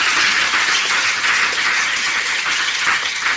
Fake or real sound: fake